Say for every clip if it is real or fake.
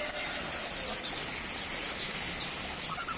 real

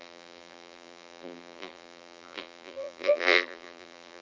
fake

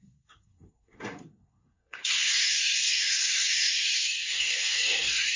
fake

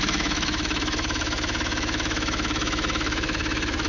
fake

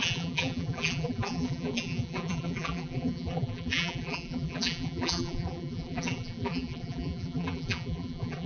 fake